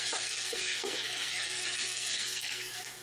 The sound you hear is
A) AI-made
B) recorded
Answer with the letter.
A